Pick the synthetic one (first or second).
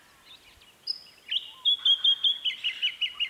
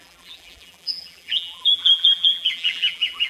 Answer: second